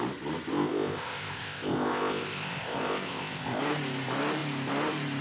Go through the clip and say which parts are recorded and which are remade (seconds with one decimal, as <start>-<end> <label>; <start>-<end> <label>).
0.0-0.5 recorded; 0.5-3.6 remade; 3.6-5.2 recorded